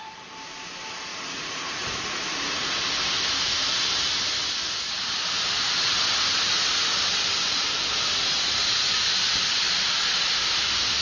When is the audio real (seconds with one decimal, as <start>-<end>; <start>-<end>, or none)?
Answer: 0.0-1.1; 2.9-11.0